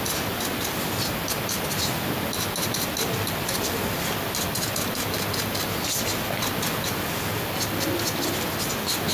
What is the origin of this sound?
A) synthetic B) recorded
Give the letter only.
B